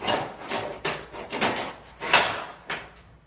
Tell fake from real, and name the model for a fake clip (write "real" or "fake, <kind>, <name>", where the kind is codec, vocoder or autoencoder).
real